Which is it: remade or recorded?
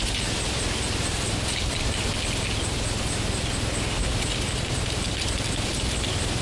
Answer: recorded